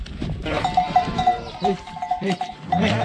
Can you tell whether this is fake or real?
fake